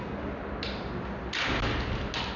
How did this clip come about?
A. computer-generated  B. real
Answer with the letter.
B